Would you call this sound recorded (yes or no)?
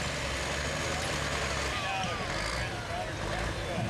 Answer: yes